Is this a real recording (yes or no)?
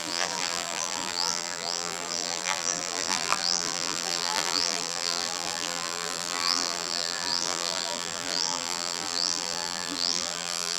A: no